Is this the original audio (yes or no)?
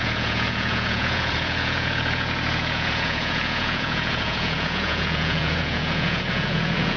no